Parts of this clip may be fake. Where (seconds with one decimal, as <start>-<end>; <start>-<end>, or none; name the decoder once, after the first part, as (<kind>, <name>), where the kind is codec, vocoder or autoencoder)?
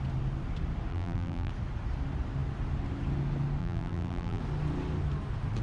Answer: 0.9-1.5 (vocoder, BigVGAN v2); 3.6-4.4